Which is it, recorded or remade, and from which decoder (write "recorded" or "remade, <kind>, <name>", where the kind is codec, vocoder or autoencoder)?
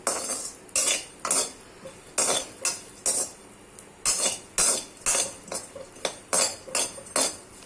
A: recorded